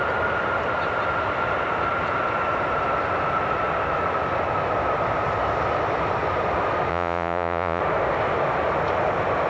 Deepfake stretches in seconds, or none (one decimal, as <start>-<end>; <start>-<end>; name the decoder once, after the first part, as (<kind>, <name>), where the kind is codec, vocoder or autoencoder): 6.9-7.8 (vocoder, Vocos)